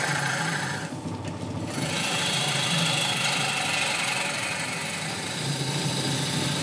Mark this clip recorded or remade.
remade